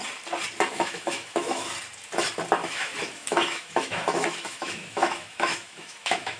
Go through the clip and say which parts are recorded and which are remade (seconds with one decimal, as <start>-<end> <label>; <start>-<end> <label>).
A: 0.0-0.7 recorded; 0.7-1.7 remade; 1.7-2.6 recorded; 2.6-6.4 remade